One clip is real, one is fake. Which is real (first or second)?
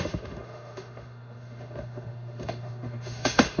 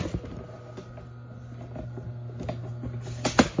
second